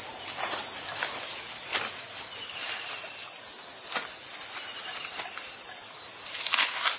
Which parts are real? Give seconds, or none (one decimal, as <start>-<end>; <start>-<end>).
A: 0.0-7.0